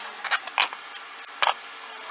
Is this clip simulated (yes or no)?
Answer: no